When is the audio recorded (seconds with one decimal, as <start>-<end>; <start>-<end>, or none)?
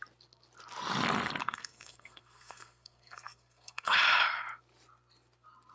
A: 0.0-1.4; 4.0-5.7